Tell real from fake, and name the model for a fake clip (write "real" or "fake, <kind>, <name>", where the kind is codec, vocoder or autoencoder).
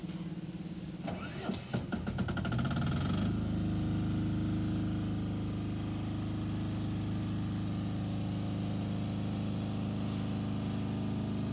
real